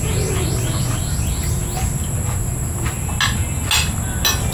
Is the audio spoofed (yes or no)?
no